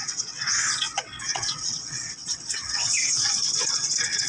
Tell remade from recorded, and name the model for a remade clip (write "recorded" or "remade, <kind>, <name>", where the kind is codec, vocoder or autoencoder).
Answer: remade, vocoder, WaveNeXt